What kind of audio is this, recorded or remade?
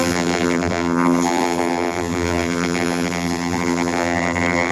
remade